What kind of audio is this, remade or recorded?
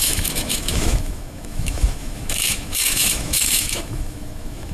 remade